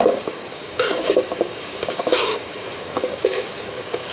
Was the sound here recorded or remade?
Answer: remade